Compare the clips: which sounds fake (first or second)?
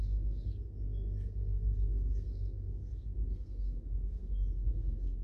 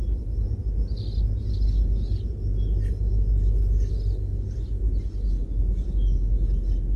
first